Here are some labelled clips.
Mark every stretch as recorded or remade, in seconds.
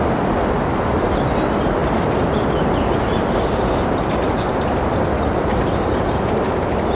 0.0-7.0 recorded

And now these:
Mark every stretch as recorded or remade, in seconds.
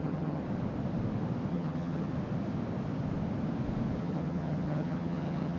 0.0-0.4 remade; 0.4-1.5 recorded; 1.5-2.1 remade; 2.1-4.0 recorded; 4.0-5.6 remade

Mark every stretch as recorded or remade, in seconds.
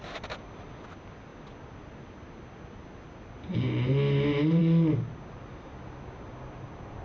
0.0-7.0 recorded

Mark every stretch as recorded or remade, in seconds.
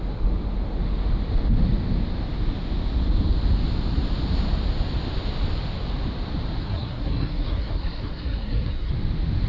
0.0-6.6 recorded; 6.6-8.9 remade; 8.9-9.5 recorded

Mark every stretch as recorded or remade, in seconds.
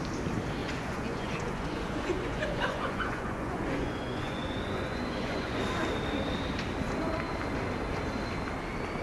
0.0-0.6 recorded; 0.6-5.6 remade; 5.6-9.0 recorded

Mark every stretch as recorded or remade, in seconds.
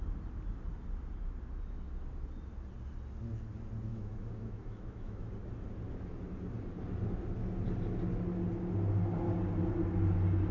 0.0-3.9 recorded; 3.9-5.3 remade; 5.3-10.5 recorded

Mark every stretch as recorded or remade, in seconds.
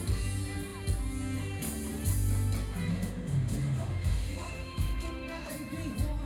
0.0-2.9 recorded; 2.9-5.5 remade; 5.5-6.3 recorded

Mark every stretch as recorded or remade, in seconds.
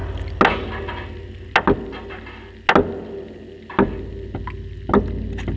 0.0-5.6 recorded